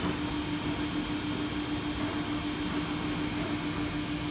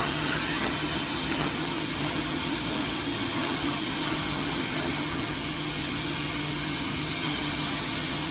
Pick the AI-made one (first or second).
second